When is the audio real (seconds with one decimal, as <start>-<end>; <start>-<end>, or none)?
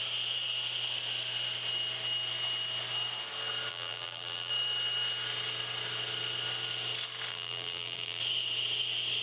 0.0-3.7; 4.5-7.3; 8.2-9.2